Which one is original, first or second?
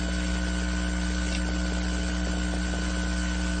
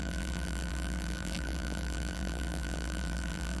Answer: first